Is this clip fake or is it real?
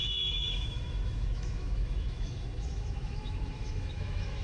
fake